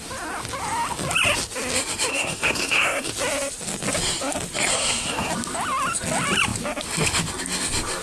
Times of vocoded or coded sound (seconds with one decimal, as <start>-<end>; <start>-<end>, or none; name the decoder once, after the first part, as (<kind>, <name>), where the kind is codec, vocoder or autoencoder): 2.1-3.1 (codec, SNAC); 4.7-5.3